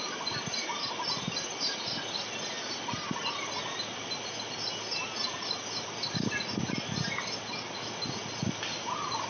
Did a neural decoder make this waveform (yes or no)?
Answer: no